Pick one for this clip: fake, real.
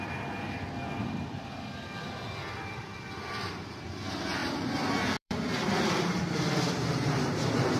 fake